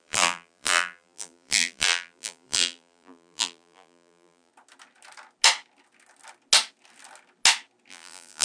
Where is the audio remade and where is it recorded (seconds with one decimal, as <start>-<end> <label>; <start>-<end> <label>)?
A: 0.0-4.5 remade; 4.5-7.9 recorded; 7.9-8.4 remade